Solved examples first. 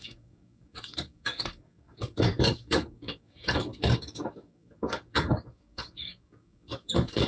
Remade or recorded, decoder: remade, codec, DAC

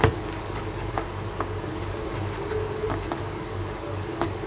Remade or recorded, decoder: remade, codec, DAC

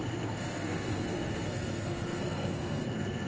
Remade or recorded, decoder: remade, codec, SNAC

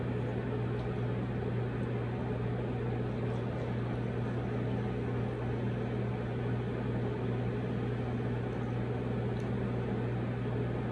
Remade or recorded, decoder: recorded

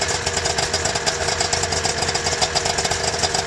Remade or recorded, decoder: recorded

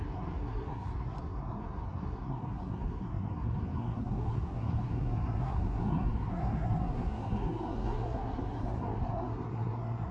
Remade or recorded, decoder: remade, codec, SNAC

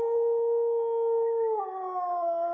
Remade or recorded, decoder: recorded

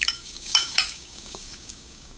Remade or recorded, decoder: remade, codec, DAC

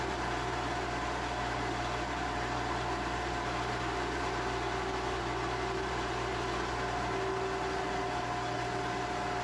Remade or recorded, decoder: recorded